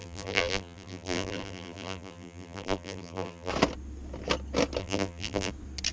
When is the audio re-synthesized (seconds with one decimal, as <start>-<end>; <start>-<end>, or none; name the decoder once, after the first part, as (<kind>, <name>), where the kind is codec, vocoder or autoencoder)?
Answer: 0.0-3.5 (vocoder, BigVGAN v2); 4.8-5.5